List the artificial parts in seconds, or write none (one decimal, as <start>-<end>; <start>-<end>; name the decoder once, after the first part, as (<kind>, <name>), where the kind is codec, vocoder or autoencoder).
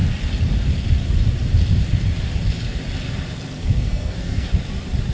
3.6-4.5 (codec, SNAC)